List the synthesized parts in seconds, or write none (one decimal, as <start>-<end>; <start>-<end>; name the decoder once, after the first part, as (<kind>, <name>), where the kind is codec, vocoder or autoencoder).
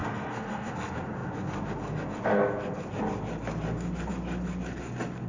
0.0-0.7 (codec, SNAC)